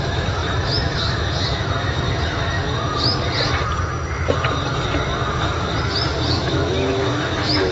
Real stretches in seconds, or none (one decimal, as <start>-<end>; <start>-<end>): 2.6-6.3